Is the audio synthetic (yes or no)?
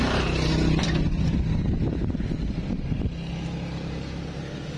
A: no